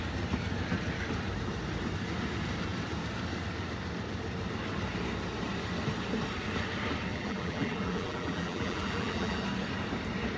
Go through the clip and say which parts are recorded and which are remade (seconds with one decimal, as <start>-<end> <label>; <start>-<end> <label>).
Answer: 0.0-7.1 recorded; 7.1-9.4 remade; 9.4-10.4 recorded